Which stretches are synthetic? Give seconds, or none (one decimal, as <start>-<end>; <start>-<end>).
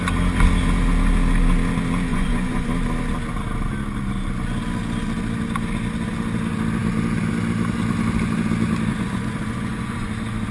2.1-2.7; 8.9-10.1